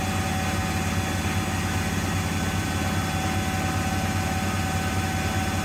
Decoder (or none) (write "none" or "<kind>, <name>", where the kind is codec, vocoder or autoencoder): none